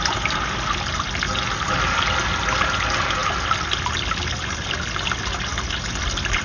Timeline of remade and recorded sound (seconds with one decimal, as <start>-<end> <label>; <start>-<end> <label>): 0.0-6.4 recorded